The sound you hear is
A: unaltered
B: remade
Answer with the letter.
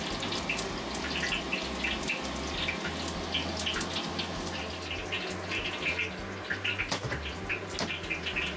A